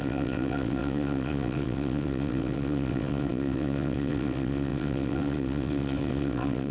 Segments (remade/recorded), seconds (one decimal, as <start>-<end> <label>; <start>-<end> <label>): 0.0-6.7 remade